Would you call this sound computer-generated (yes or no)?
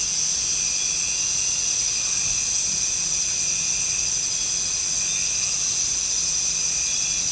no